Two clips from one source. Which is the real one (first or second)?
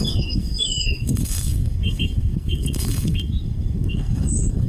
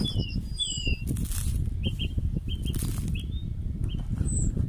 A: second